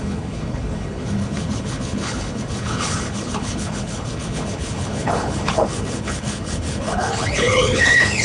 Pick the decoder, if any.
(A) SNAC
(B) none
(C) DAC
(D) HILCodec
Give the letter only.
D